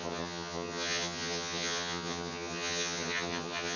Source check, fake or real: fake